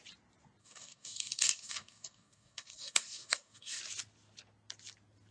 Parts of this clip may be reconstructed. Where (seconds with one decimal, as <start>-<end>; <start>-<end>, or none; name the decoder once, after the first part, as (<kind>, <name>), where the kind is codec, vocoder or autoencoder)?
0.6-3.8 (codec, DAC)